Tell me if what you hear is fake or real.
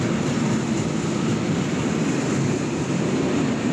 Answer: real